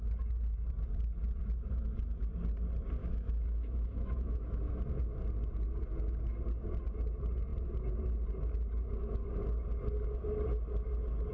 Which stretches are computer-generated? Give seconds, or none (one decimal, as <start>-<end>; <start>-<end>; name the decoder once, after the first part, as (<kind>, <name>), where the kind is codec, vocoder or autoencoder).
3.0-4.8 (autoencoder, DAC-VAE)